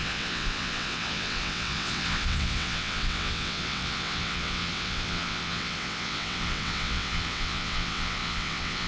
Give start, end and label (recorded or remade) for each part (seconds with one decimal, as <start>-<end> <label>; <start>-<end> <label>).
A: 0.0-8.9 remade